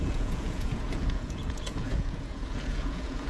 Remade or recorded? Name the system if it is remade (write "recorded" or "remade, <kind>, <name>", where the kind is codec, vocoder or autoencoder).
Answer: remade, vocoder, Vocos